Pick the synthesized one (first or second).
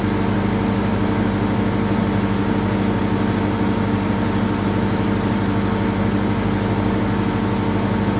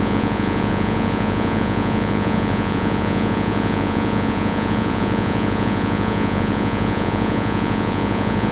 second